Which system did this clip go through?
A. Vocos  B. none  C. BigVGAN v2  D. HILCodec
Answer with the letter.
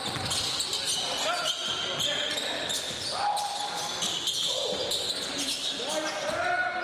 B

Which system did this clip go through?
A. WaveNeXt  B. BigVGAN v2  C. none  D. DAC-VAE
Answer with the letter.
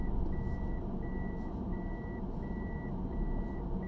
C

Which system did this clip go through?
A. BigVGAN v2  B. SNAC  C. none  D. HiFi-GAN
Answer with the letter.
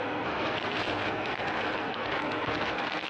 B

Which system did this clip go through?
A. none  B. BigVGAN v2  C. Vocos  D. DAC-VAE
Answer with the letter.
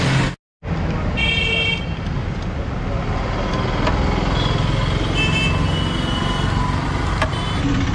A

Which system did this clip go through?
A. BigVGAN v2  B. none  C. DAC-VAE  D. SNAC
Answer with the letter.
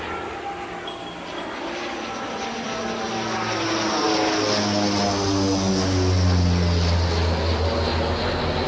B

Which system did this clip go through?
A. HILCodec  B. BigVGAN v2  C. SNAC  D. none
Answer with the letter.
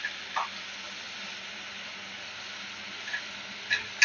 D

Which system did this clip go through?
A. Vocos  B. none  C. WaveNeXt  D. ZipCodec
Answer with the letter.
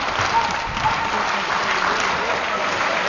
B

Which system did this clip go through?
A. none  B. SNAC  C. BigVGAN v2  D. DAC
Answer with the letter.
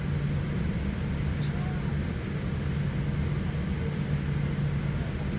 A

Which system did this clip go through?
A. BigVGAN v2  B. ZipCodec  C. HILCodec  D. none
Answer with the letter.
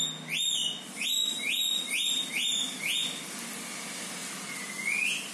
D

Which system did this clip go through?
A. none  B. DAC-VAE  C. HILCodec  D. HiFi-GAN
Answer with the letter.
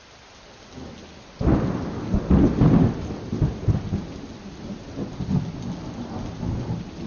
A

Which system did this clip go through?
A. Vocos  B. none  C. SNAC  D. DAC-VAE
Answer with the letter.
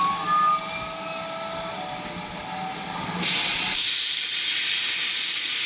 B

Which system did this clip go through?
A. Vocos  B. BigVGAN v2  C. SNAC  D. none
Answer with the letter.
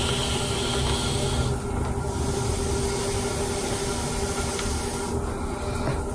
D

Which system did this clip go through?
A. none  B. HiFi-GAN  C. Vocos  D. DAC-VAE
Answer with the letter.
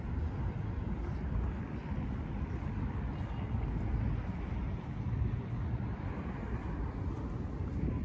A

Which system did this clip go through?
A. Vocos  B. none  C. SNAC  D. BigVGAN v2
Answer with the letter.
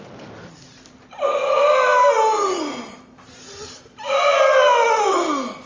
B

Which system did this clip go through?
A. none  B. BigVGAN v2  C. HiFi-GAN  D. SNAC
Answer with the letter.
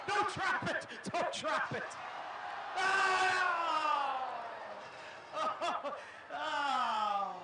B